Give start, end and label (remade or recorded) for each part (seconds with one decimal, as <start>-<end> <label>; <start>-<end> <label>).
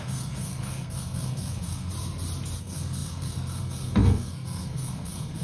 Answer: 0.0-1.9 remade; 1.9-2.6 recorded; 2.6-5.4 remade